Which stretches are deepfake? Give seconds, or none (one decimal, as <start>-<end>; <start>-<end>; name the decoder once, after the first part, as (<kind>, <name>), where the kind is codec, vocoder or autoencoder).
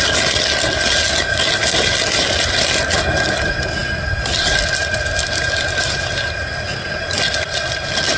none